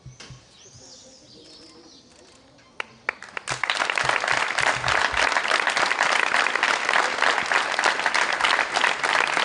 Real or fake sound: real